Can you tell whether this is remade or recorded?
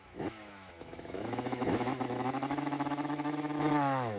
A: remade